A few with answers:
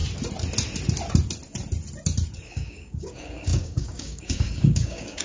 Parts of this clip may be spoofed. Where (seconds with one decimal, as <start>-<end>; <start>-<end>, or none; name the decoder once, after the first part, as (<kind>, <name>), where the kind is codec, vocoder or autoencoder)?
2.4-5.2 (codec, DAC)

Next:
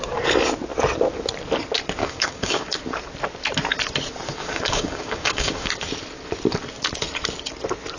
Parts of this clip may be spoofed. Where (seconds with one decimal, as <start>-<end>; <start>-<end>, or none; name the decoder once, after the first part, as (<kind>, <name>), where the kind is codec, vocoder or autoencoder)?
2.0-2.7 (codec, DAC); 4.4-5.7

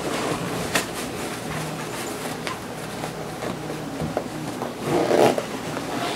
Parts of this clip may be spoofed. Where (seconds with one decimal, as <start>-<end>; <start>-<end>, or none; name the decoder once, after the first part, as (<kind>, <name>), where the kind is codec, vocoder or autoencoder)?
0.0-0.4 (codec, DAC); 4.1-5.0; 5.7-6.2